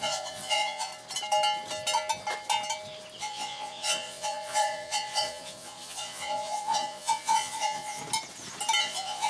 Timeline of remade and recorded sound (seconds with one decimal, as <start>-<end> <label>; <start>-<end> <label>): 0.0-0.9 remade; 0.9-3.2 recorded; 3.2-8.0 remade; 8.0-8.8 recorded; 8.8-9.3 remade